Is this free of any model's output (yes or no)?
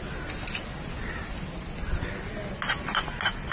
yes